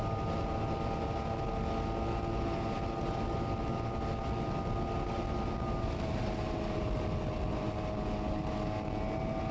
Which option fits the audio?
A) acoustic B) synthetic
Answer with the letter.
A